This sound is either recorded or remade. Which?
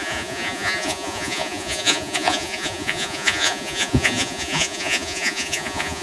remade